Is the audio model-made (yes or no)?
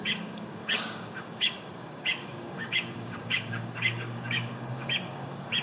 yes